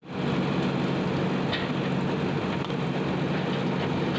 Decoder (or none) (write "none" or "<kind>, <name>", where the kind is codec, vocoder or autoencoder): none